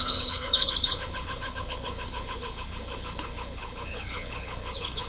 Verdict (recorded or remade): remade